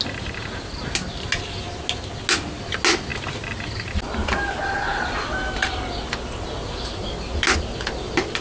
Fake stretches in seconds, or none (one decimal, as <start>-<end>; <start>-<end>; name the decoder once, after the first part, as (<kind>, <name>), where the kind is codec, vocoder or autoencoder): none